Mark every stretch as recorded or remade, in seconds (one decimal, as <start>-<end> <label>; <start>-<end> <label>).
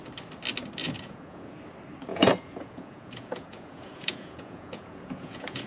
0.0-0.8 recorded; 0.8-1.6 remade; 1.6-2.1 recorded; 2.1-5.7 remade